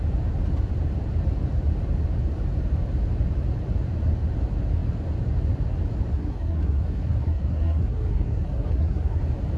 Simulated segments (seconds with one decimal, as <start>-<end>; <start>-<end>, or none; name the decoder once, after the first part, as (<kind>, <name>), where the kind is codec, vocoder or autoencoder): 6.1-9.2 (codec, SNAC)